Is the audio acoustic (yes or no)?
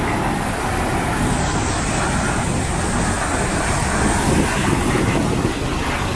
yes